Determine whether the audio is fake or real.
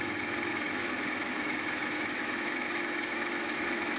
fake